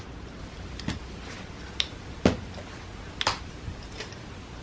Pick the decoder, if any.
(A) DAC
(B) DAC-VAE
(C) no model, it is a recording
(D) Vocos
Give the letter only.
C